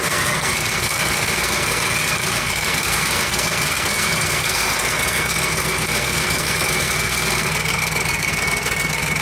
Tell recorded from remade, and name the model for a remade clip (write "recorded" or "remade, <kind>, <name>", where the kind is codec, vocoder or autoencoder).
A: remade, codec, SNAC